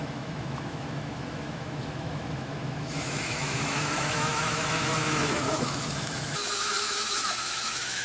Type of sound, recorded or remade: remade